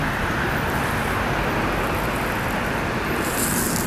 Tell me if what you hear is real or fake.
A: real